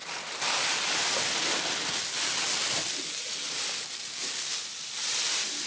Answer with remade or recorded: recorded